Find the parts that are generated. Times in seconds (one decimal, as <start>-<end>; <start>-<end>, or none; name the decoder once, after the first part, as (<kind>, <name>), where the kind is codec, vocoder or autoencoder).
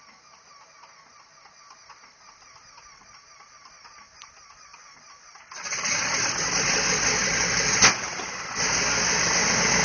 none